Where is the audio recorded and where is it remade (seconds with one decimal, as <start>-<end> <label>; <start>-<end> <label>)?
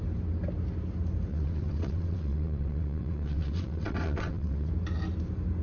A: 0.0-1.3 recorded; 1.3-4.7 remade; 4.7-5.6 recorded